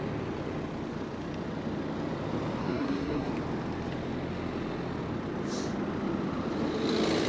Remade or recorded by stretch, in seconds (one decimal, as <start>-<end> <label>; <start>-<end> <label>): 0.0-2.6 recorded; 2.6-3.3 remade; 3.3-7.3 recorded